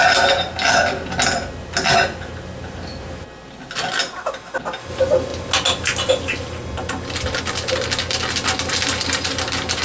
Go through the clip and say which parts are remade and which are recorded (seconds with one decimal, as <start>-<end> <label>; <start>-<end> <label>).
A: 0.0-9.8 recorded